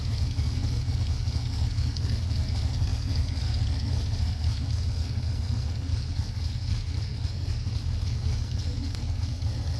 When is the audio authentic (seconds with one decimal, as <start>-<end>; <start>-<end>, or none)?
none